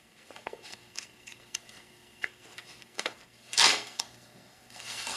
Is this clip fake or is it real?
fake